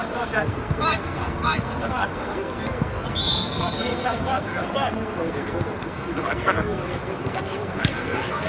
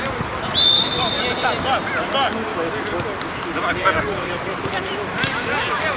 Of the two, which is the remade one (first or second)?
first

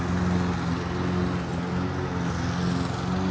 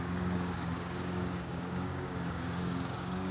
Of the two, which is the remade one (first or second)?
second